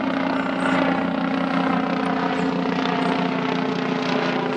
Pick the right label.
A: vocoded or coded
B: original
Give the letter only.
B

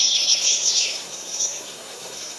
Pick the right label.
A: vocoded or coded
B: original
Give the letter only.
A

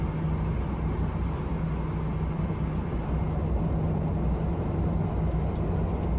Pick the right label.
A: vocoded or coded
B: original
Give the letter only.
B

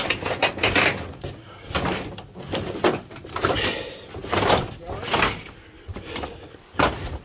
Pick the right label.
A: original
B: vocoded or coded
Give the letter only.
A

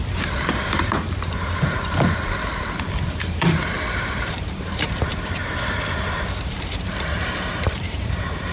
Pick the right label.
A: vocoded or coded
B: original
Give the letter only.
A